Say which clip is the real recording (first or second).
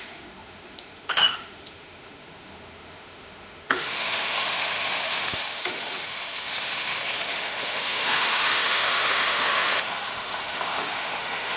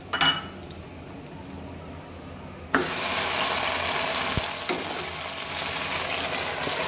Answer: second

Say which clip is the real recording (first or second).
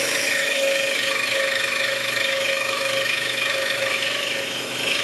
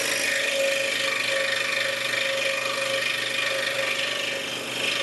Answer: second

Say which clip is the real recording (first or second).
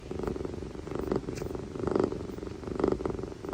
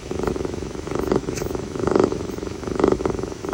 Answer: first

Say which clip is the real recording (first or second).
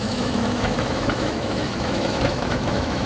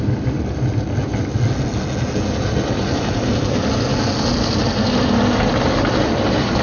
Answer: second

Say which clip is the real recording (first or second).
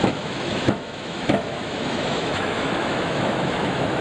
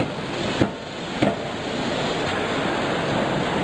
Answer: second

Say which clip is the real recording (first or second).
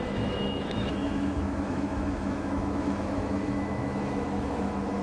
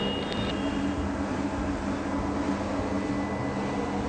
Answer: second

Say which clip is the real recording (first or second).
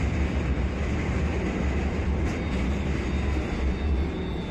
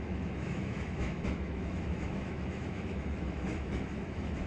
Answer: first